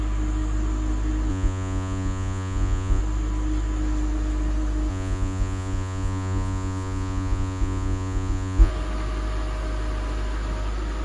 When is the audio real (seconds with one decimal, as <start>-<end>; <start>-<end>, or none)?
0.0-1.3; 3.0-4.9; 8.7-11.0